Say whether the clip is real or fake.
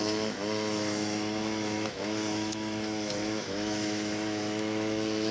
fake